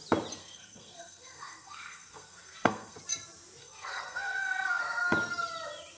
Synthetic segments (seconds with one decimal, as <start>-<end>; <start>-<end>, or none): 0.4-3.0; 3.6-4.8